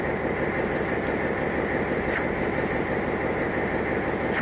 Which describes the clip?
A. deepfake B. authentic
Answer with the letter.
B